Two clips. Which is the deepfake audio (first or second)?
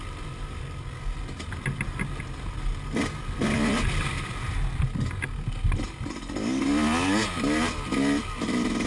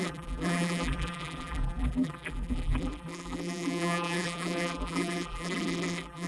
second